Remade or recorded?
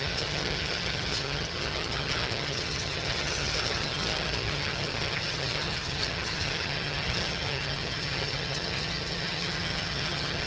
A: remade